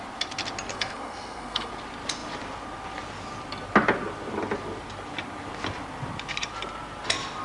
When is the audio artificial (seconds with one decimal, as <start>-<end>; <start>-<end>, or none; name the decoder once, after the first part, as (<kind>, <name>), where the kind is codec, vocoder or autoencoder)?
0.7-1.7 (codec, SNAC)

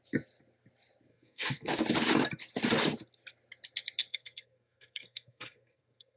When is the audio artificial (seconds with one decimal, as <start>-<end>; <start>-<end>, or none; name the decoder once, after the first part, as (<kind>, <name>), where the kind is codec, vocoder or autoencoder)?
1.1-1.7 (codec, SNAC); 4.1-6.2

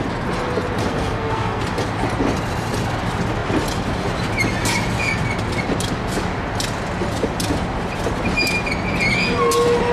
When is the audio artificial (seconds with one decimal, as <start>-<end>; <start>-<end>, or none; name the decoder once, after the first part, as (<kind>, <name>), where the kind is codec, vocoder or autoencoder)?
0.8-1.6 (codec, SNAC)